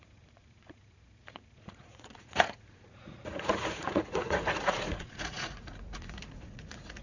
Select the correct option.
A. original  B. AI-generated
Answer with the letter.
B